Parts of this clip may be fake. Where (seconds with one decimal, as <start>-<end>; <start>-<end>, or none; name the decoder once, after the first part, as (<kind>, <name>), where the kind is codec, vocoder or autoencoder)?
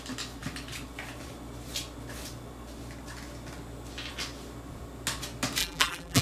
5.6-6.2 (vocoder, BigVGAN v2)